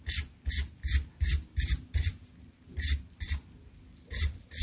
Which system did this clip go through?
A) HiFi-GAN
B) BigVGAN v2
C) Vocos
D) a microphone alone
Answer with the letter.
D